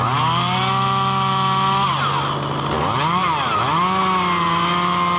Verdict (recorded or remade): recorded